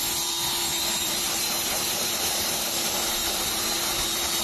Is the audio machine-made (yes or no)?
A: yes